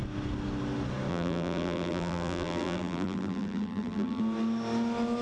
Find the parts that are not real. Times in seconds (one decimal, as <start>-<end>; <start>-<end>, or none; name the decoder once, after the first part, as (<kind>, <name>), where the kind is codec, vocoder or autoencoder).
1.1-4.2 (vocoder, BigVGAN v2)